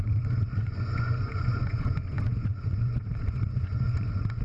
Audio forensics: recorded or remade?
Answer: remade